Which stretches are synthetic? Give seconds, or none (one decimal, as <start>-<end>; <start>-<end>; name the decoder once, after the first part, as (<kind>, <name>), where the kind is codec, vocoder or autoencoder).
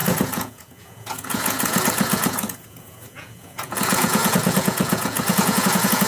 0.0-6.1 (vocoder, Vocos)